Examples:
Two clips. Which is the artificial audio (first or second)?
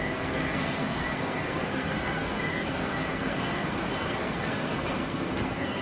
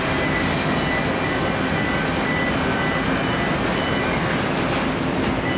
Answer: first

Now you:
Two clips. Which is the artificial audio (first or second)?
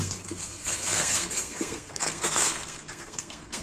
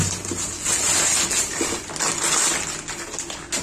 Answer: first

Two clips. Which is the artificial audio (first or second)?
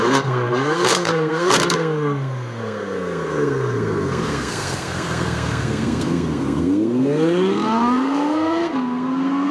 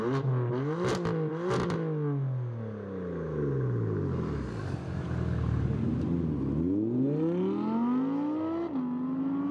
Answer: first